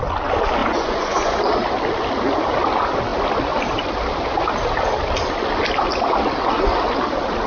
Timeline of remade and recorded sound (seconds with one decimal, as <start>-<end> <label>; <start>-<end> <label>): 0.0-0.6 recorded; 0.6-1.4 remade; 1.4-7.5 recorded